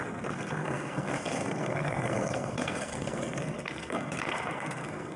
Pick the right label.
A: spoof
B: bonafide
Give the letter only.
A